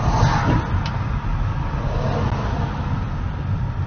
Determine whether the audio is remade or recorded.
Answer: recorded